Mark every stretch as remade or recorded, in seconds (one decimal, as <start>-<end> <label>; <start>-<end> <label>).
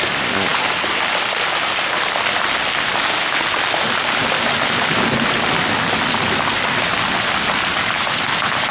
0.0-8.7 recorded